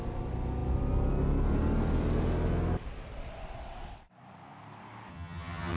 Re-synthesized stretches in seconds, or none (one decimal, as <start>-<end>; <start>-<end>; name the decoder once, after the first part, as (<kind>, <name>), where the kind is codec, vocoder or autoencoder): 5.1-5.8 (vocoder, HiFi-GAN)